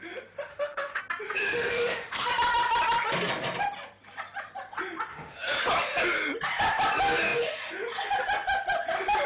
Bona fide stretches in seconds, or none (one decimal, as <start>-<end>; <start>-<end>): 0.0-0.5; 1.0-1.4; 2.3-5.1; 5.6-9.3